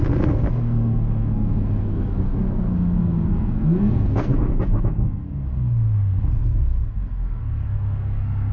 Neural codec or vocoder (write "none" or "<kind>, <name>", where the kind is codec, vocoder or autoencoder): codec, SNAC